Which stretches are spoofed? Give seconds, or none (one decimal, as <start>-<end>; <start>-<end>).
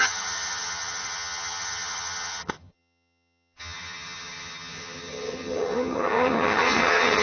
0.0-7.2